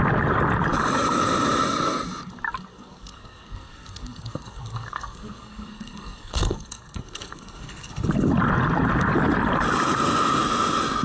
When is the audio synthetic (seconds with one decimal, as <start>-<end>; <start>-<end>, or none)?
2.7-7.9